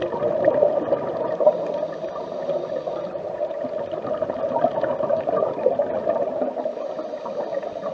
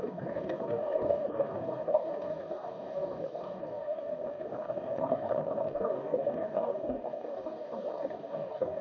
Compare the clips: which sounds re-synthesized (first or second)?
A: second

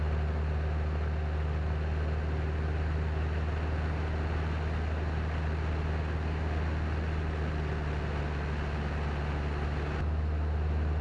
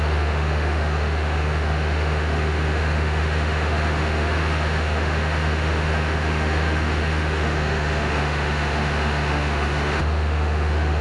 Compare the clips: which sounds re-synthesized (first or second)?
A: second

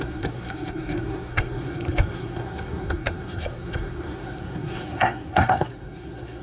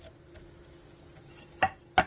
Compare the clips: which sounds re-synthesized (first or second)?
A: first